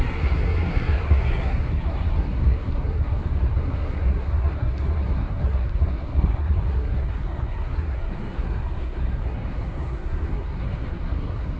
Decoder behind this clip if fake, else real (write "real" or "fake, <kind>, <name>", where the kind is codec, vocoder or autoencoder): fake, codec, SNAC